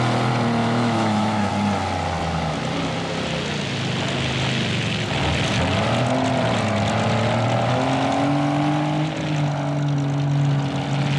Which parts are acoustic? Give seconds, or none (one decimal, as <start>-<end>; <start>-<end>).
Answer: 0.0-0.6; 1.5-11.2